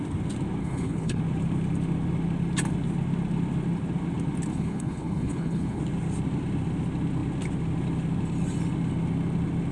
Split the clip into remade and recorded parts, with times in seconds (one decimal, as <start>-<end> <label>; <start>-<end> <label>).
0.0-0.6 recorded; 0.6-1.2 remade; 1.2-4.5 recorded; 4.5-5.8 remade; 5.8-9.7 recorded